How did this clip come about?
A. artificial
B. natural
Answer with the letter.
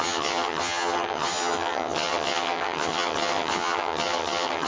A